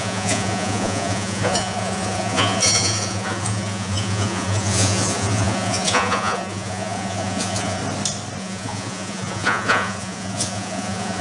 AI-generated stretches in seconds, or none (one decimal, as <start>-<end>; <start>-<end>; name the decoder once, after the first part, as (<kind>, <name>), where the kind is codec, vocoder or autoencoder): 0.0-7.8 (vocoder, Vocos); 8.4-11.2

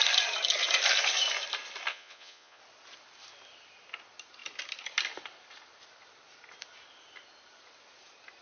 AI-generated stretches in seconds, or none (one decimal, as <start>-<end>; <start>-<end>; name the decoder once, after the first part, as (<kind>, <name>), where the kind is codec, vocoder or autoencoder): 1.9-2.6 (vocoder, Vocos)

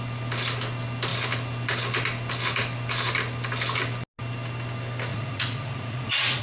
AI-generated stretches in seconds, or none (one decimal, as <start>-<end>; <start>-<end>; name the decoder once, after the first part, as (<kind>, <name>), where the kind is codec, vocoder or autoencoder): 5.1-6.4 (vocoder, Vocos)

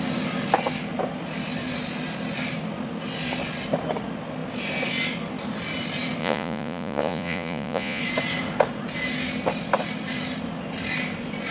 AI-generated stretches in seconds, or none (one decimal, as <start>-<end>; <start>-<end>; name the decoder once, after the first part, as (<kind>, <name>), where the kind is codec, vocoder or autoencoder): 6.2-8.0 (vocoder, Vocos)

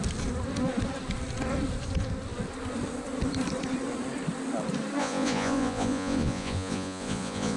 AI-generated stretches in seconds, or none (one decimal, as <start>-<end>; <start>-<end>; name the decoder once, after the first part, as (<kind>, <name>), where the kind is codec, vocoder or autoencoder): 5.0-7.6 (vocoder, Vocos)

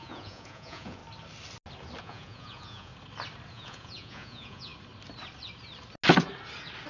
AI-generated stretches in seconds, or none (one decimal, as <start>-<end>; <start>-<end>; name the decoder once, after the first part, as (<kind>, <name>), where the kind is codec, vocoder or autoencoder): 0.0-1.0 (vocoder, Vocos); 2.0-2.9; 3.5-4.7

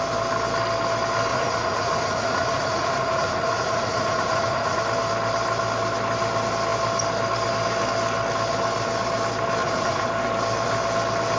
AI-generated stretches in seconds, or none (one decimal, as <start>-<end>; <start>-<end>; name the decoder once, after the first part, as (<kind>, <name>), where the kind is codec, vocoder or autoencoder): 1.3-4.8 (vocoder, Vocos); 9.6-10.1